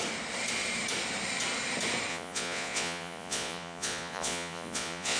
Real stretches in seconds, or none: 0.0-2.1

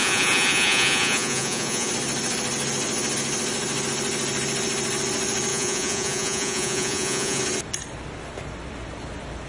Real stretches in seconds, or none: 1.9-5.5; 7.4-9.5

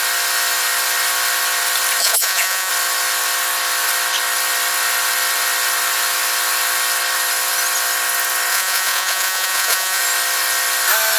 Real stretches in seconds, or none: 0.0-2.0; 2.7-8.5; 10.0-11.2